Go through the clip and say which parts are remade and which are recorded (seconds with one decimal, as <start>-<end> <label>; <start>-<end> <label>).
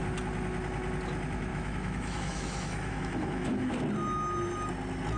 0.0-1.5 recorded; 1.5-3.7 remade; 3.7-5.2 recorded